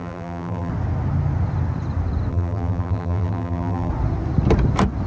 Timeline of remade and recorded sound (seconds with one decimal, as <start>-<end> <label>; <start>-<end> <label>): 0.0-0.7 remade; 0.7-2.3 recorded; 2.3-3.9 remade; 3.9-5.1 recorded